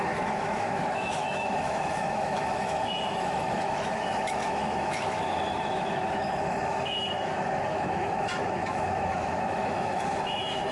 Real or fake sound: fake